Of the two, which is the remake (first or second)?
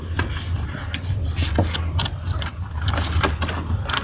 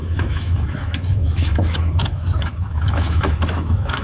second